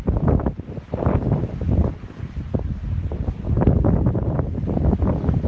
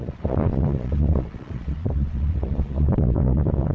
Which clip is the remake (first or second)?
second